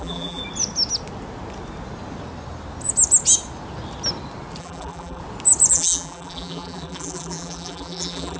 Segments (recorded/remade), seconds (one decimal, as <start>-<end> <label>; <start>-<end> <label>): 0.0-0.4 remade; 0.4-4.6 recorded; 4.6-5.2 remade; 5.2-5.7 recorded; 5.7-8.4 remade